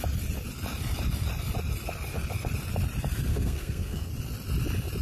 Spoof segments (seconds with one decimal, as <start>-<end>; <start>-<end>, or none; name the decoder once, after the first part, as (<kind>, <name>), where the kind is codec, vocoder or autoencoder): 3.3-4.1 (codec, SNAC)